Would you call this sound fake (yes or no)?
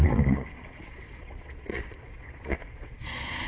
yes